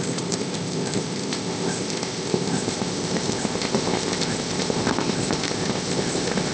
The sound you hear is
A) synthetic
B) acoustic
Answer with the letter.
A